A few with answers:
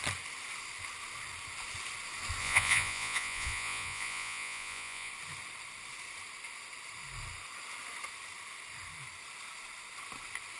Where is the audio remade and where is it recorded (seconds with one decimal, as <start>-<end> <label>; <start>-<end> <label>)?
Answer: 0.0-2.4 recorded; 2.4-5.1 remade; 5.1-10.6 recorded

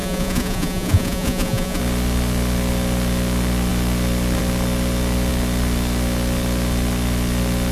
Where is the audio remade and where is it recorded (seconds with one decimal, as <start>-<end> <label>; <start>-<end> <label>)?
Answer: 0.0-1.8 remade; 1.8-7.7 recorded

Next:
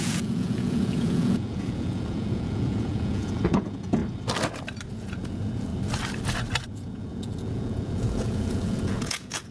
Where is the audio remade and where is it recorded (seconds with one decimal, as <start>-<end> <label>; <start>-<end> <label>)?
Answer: 0.0-4.0 remade; 4.0-4.9 recorded; 4.9-5.7 remade; 5.7-6.7 recorded; 6.7-9.5 remade

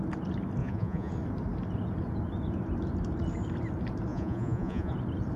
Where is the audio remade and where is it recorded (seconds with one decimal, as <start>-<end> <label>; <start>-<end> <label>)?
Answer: 0.0-0.6 recorded; 0.6-1.1 remade; 1.1-4.1 recorded; 4.1-4.9 remade; 4.9-5.4 recorded

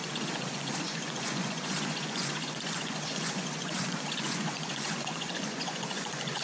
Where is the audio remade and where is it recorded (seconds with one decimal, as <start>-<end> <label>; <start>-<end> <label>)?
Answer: 0.0-6.4 remade

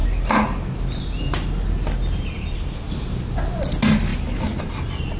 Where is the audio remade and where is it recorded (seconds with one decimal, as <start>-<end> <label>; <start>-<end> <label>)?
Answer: 0.0-5.2 recorded